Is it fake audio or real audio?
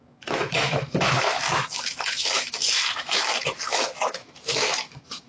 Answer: fake